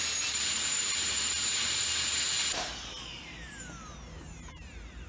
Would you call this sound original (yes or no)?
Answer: no